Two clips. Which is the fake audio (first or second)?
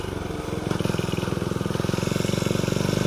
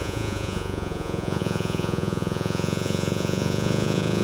second